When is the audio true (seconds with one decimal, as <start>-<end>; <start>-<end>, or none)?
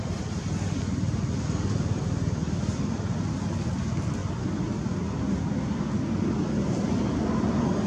0.0-7.9